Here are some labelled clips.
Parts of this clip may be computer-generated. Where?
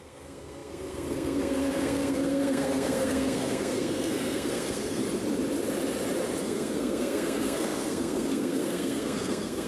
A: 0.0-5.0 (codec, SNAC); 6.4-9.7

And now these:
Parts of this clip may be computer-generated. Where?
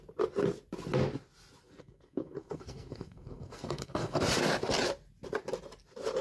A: 1.6-4.2 (codec, SNAC)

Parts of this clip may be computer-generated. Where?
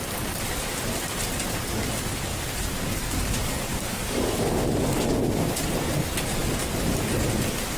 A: 2.3-5.5 (codec, DAC)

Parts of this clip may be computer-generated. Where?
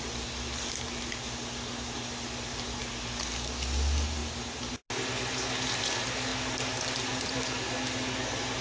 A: 6.3-7.5 (vocoder, BigVGAN v2)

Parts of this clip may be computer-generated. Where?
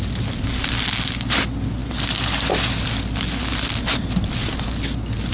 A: none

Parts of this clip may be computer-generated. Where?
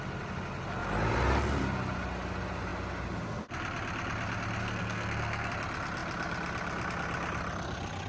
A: 4.6-5.5 (codec, SNAC)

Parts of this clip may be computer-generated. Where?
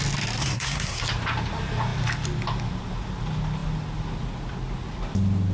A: 0.4-1.0 (codec, SNAC)